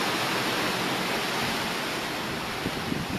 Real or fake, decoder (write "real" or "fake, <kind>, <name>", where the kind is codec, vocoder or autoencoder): real